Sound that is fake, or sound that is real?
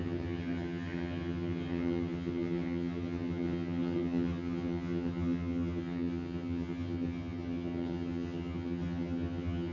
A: fake